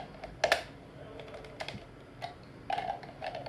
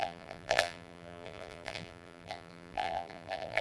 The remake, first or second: second